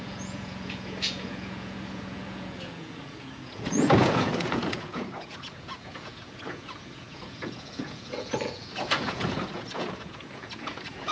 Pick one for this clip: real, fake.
fake